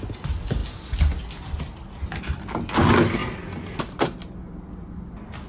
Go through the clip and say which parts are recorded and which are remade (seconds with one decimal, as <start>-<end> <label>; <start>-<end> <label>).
0.0-5.5 recorded